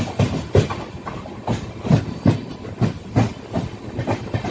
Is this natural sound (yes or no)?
yes